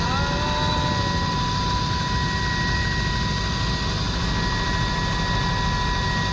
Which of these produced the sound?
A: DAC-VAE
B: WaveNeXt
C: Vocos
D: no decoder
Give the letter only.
D